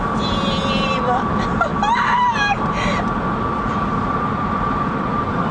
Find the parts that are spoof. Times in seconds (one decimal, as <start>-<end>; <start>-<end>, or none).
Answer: 0.0-1.7; 4.1-5.5